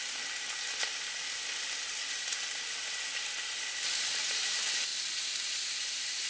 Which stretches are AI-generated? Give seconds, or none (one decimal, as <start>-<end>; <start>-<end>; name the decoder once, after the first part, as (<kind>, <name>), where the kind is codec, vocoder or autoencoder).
none